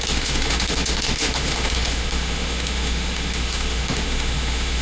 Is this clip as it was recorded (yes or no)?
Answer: no